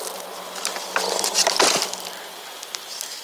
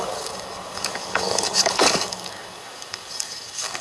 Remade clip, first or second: second